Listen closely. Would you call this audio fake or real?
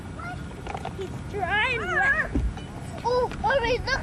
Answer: real